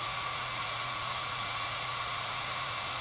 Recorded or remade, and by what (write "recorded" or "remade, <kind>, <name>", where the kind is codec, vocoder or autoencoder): remade, vocoder, Vocos